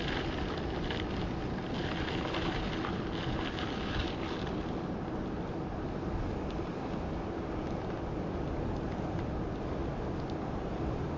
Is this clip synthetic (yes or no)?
no